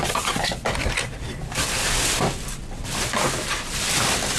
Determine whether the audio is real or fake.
fake